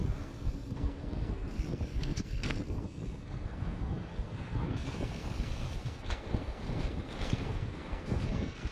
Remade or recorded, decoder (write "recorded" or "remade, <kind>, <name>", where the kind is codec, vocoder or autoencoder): remade, codec, SNAC